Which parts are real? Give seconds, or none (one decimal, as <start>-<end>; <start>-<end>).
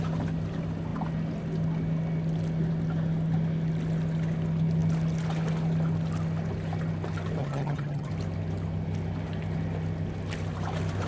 0.0-7.4; 8.1-11.1